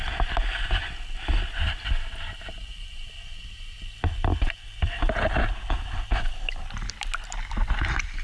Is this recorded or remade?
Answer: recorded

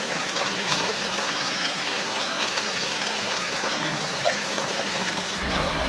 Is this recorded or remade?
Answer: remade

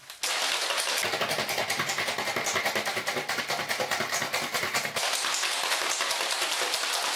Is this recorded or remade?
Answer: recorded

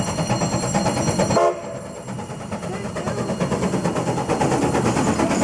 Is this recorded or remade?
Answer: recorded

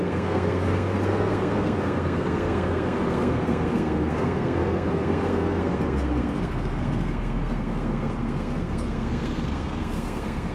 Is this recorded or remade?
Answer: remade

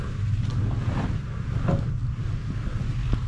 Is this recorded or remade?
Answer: recorded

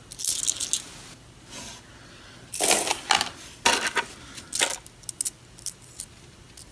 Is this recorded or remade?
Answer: recorded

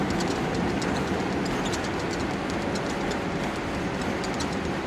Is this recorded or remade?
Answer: recorded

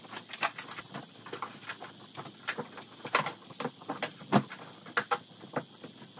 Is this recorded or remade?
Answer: recorded